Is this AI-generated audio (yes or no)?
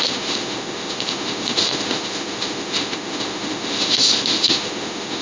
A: yes